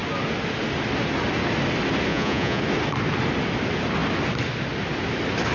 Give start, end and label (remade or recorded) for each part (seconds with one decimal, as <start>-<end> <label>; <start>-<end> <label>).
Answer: 0.0-2.1 recorded; 2.1-2.6 remade; 2.6-5.5 recorded